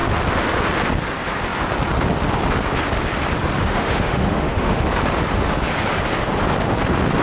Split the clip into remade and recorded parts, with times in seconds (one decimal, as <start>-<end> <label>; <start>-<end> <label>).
0.0-3.6 recorded; 3.6-4.8 remade; 4.8-7.2 recorded